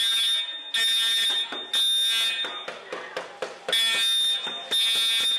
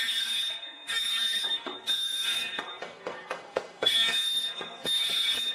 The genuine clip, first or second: first